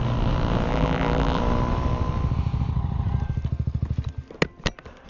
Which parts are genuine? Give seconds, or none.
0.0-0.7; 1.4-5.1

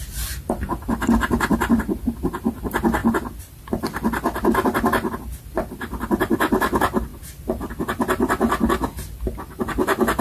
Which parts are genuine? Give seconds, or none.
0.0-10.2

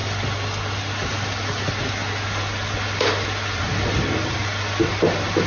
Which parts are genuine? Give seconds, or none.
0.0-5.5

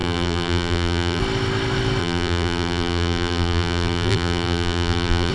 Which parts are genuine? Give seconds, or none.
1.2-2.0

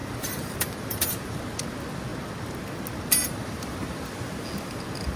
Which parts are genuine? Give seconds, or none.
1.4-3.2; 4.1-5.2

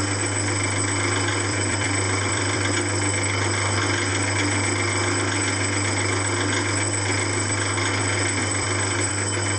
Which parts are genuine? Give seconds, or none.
0.0-1.3; 2.6-8.4; 9.1-9.6

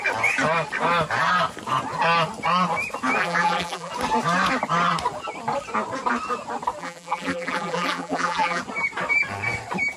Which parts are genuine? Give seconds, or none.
0.0-3.2; 3.9-6.8; 8.6-10.0